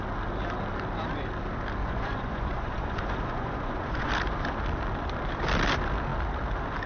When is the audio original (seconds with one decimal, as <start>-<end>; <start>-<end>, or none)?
0.0-1.8; 4.1-6.9